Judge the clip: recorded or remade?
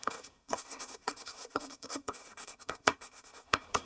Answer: remade